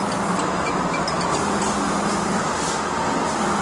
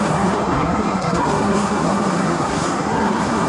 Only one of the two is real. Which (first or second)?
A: first